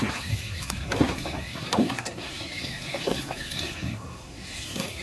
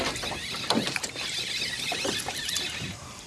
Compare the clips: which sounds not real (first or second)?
first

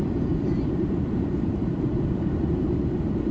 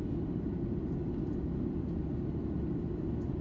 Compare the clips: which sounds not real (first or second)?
first